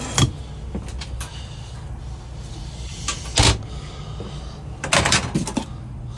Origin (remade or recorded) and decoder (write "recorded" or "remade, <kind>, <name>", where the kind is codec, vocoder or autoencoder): recorded